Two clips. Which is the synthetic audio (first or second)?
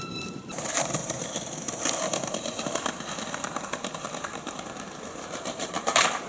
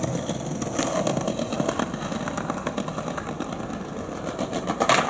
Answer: first